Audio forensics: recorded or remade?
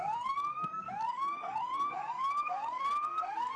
remade